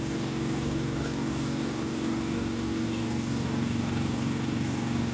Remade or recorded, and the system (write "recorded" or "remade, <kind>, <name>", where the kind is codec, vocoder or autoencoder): remade, codec, DAC